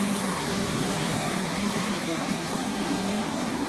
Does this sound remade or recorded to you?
remade